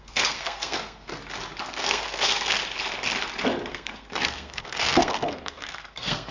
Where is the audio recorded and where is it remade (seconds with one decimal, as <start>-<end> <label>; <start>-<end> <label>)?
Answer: 0.0-1.1 remade; 1.1-1.6 recorded; 1.6-2.6 remade; 2.6-3.7 recorded; 3.7-6.3 remade